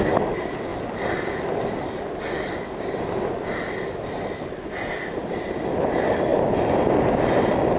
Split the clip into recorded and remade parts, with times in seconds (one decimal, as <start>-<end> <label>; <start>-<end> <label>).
0.0-7.8 recorded